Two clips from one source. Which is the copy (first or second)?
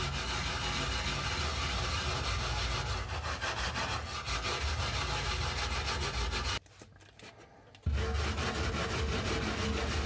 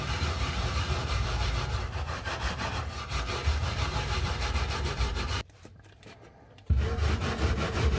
second